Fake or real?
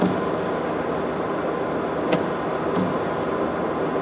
real